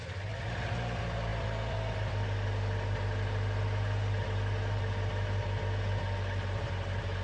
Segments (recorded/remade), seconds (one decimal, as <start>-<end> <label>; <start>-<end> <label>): 0.0-7.2 recorded